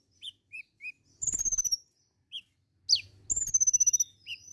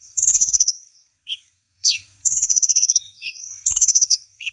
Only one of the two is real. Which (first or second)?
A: first